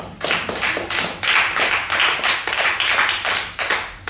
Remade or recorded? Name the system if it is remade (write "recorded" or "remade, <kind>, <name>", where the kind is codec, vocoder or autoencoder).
recorded